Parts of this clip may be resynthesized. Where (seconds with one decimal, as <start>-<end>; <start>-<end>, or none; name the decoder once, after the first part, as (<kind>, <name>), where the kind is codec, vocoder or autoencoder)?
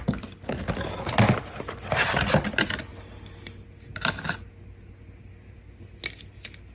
none